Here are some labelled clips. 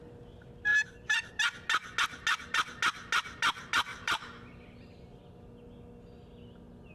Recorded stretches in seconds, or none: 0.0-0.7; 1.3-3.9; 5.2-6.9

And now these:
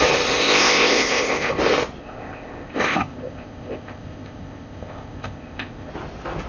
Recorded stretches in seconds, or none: 0.0-0.4; 1.6-2.0; 5.9-6.5

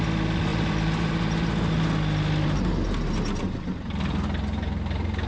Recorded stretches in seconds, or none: 0.0-0.5; 1.5-5.3

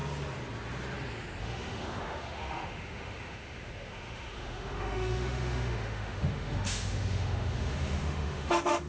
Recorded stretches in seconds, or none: 0.0-1.4

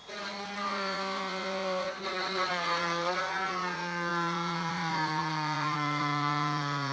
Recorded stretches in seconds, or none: none

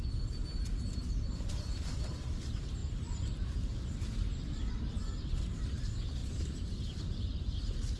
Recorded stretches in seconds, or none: 0.0-1.0; 1.5-6.2

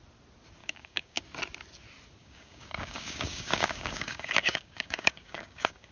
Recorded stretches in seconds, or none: 0.0-0.6; 1.2-2.2

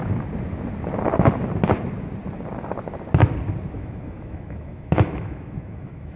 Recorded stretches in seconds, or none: 0.0-3.7